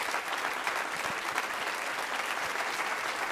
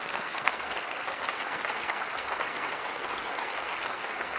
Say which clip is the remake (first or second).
second